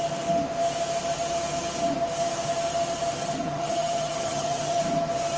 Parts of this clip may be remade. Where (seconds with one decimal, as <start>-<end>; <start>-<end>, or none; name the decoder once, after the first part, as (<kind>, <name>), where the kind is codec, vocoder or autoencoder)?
3.2-4.8 (vocoder, HiFi-GAN)